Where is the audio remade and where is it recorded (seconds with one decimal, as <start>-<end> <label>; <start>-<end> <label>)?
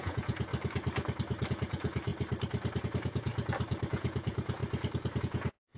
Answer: 0.0-0.5 remade; 0.5-1.5 recorded; 1.5-2.1 remade; 2.1-2.8 recorded; 2.8-3.3 remade; 3.3-3.9 recorded; 3.9-4.6 remade; 4.6-5.2 recorded; 5.2-5.8 remade